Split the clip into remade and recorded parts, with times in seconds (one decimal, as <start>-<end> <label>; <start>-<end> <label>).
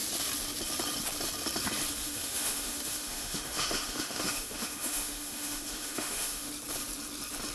0.0-2.0 recorded; 2.0-6.5 remade; 6.5-7.5 recorded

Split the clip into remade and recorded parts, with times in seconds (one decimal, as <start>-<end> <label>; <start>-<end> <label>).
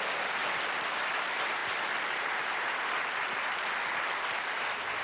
0.0-5.0 recorded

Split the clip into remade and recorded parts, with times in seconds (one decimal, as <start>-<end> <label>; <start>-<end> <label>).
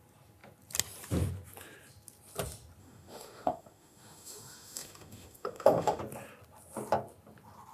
0.0-2.8 recorded; 2.8-6.0 remade; 6.0-7.7 recorded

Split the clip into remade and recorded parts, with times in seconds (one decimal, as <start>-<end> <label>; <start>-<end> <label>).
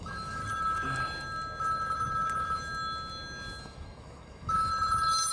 0.0-0.4 remade; 0.4-3.6 recorded; 3.6-4.7 remade; 4.7-5.3 recorded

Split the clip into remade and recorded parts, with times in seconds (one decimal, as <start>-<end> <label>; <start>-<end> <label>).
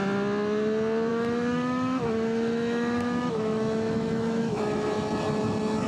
0.0-1.1 recorded; 1.1-4.6 remade; 4.6-5.9 recorded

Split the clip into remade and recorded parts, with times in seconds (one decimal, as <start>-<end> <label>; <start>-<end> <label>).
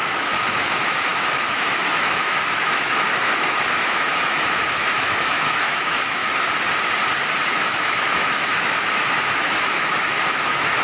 0.0-6.2 remade; 6.2-7.4 recorded; 7.4-10.8 remade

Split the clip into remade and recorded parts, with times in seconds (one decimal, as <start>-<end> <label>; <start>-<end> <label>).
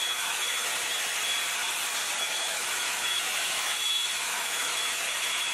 0.0-0.7 remade; 0.7-2.2 recorded; 2.2-5.5 remade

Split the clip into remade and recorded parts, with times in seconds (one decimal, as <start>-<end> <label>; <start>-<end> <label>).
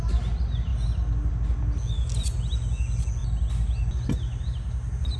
0.0-5.2 recorded